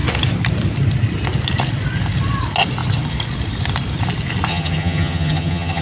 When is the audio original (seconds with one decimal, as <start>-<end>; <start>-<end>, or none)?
0.0-4.5